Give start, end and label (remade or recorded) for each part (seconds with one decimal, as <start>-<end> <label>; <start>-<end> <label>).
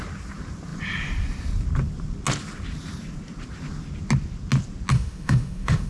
0.0-4.9 recorded; 4.9-5.9 remade